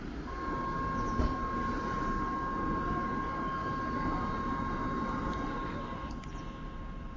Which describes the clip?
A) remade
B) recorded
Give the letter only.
B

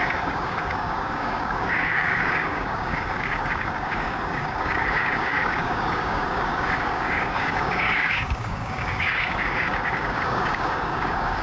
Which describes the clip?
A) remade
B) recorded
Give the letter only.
A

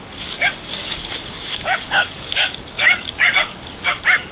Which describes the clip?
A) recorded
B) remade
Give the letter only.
B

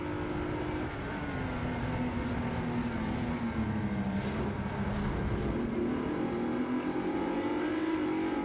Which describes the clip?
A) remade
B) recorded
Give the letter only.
B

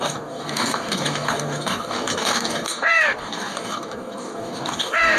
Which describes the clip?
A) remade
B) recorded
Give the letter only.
A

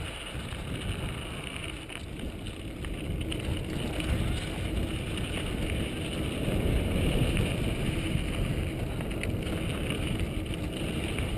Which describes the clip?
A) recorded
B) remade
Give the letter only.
A